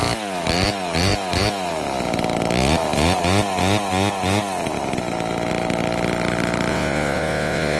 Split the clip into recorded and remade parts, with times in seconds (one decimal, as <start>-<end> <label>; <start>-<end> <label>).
0.0-6.7 recorded; 6.7-7.8 remade